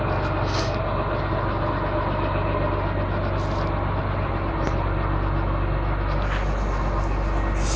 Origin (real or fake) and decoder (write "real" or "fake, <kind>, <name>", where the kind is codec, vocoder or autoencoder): real